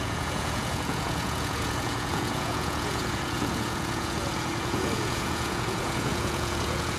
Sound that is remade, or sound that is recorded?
remade